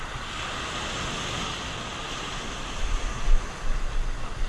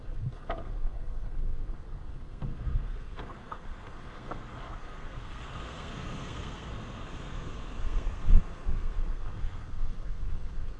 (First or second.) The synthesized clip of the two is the second